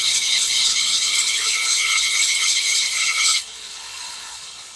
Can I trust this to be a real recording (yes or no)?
no